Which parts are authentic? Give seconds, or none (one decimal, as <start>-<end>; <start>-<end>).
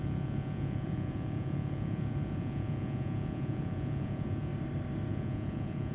4.5-5.1